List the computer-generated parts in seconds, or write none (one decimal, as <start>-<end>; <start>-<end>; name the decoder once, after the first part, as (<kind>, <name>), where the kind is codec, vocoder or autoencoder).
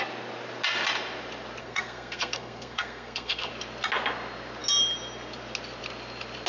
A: 1.6-3.5 (codec, SNAC)